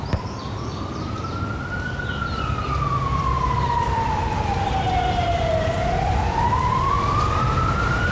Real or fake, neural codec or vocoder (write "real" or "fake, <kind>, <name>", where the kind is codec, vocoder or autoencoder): fake, vocoder, BigVGAN v2